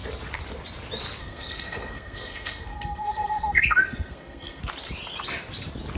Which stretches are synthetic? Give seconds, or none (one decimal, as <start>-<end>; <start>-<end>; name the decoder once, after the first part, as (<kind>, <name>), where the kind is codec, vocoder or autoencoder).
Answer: 1.2-4.6 (codec, SNAC)